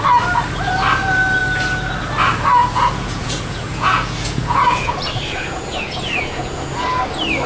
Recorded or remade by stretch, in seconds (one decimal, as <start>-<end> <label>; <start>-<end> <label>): 0.0-2.6 recorded; 2.6-7.0 remade; 7.0-7.5 recorded